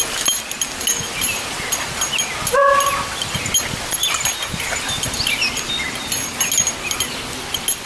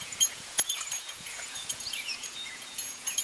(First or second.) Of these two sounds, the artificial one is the second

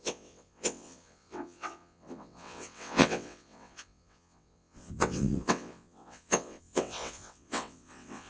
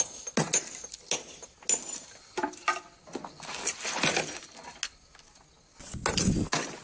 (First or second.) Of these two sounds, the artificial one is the first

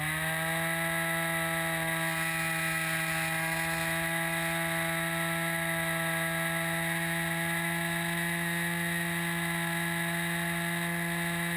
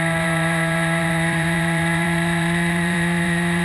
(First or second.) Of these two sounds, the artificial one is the second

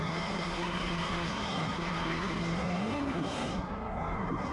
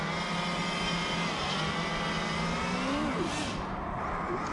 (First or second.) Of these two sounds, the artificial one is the first